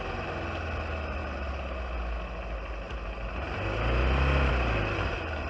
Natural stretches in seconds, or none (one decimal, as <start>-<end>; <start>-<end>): 0.0-5.5